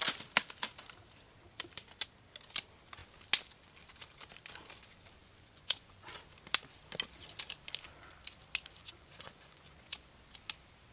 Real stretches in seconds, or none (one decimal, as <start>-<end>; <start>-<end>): 0.0-5.2; 6.2-8.8; 10.1-10.9

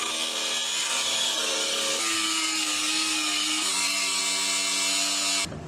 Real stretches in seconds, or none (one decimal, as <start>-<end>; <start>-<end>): 0.0-0.8; 4.2-5.7

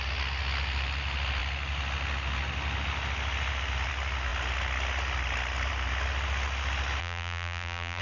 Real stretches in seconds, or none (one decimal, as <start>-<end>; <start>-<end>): 0.0-7.0

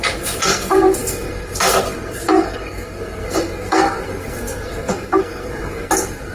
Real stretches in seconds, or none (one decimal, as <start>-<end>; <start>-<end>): none